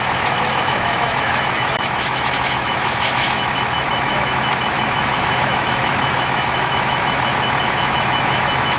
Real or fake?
fake